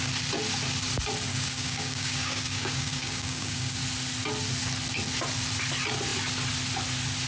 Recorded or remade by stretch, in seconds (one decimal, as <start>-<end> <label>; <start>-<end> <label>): 0.0-1.3 recorded; 1.3-3.8 remade; 3.8-7.3 recorded